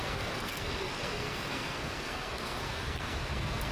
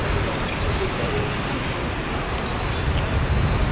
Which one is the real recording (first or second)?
second